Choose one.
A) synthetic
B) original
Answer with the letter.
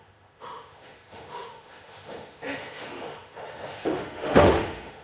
A